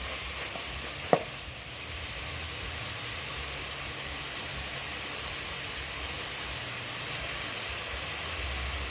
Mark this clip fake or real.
real